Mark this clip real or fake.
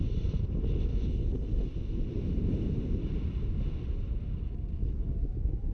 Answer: real